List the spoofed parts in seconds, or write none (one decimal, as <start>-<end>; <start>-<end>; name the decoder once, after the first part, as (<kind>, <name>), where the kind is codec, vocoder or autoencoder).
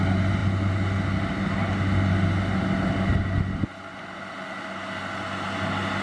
none